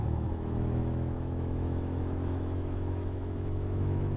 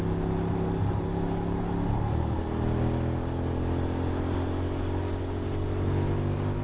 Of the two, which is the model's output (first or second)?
first